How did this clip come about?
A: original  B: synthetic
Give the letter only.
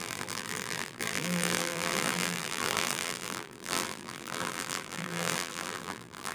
B